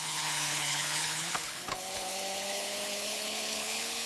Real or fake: fake